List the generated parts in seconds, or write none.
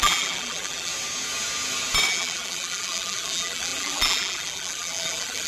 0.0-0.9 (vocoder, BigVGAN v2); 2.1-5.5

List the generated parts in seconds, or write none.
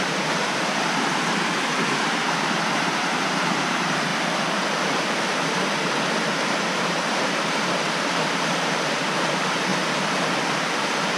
0.0-4.1 (vocoder, BigVGAN v2); 6.8-11.2